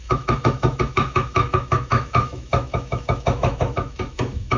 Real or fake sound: fake